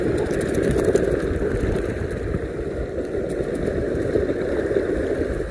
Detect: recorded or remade recorded